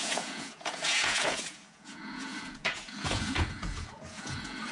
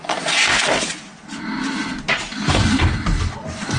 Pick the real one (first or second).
second